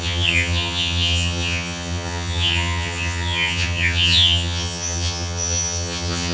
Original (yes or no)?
no